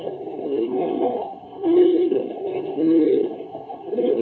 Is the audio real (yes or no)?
no